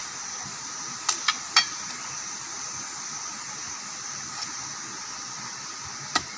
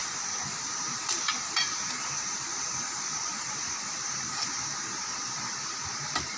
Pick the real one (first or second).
first